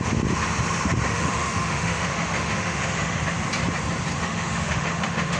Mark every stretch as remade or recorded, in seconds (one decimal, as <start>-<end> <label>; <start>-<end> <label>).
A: 0.0-1.1 recorded; 1.1-3.2 remade; 3.2-4.2 recorded; 4.2-5.4 remade